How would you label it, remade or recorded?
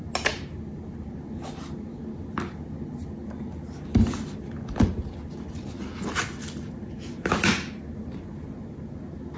recorded